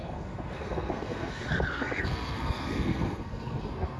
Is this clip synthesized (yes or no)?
yes